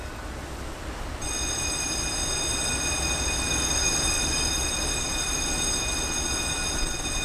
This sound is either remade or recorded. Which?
recorded